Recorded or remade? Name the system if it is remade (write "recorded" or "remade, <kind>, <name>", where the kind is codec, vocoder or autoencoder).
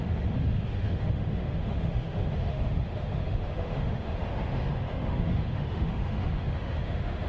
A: remade, autoencoder, DAC-VAE